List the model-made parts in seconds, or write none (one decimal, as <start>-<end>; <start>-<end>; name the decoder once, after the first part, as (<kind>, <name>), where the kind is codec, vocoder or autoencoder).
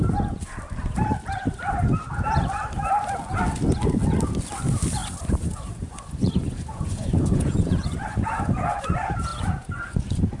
5.0-8.8 (vocoder, Vocos); 9.3-10.0